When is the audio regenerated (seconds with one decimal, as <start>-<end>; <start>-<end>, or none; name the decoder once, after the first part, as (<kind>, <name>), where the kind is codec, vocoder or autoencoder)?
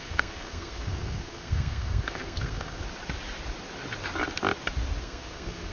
0.0-2.8 (codec, SNAC); 5.0-5.7